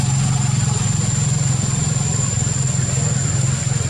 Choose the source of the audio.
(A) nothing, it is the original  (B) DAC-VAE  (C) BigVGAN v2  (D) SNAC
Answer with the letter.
A